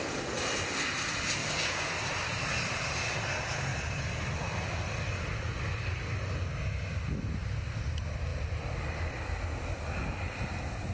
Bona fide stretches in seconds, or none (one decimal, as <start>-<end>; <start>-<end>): 0.0-1.4; 1.9-10.9